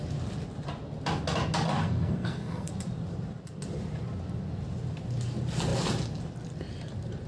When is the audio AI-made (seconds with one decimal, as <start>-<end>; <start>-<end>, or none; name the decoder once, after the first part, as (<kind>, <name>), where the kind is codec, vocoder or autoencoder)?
1.8-2.7 (codec, SNAC)